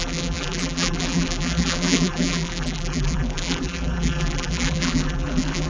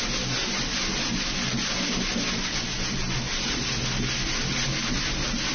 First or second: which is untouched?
second